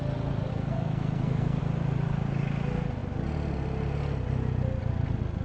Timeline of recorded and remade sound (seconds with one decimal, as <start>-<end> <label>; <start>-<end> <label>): 0.0-0.5 recorded; 0.5-1.6 remade; 1.6-5.4 recorded